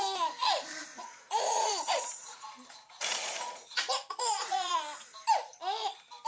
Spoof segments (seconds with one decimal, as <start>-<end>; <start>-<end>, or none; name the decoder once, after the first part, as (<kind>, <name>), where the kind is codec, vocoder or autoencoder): 0.9-4.7 (vocoder, Vocos)